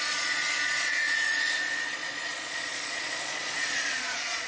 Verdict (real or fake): fake